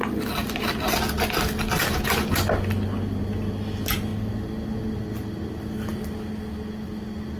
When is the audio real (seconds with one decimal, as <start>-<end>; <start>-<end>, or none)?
0.0-7.4